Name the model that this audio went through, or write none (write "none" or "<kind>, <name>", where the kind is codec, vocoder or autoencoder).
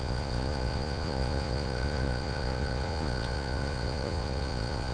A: vocoder, Vocos